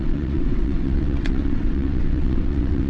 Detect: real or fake fake